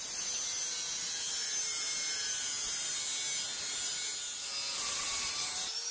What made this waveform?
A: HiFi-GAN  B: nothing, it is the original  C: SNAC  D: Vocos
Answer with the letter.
B